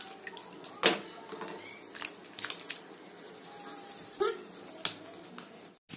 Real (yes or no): yes